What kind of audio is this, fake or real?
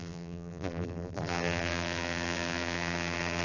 fake